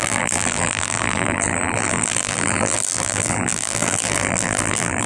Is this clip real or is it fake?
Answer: fake